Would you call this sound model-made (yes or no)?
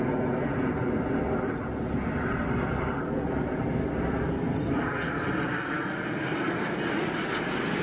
no